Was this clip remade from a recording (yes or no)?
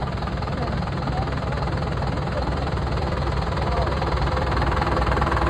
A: no